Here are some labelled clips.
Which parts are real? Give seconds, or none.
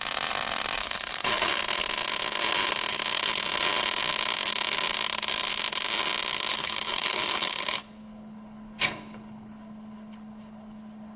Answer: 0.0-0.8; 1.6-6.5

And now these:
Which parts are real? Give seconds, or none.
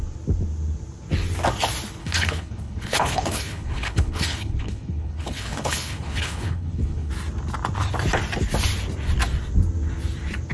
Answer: 0.0-2.0; 7.1-10.5